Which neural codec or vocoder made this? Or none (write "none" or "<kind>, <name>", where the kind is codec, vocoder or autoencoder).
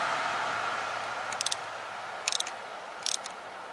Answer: none